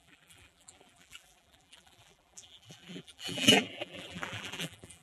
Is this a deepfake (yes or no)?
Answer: yes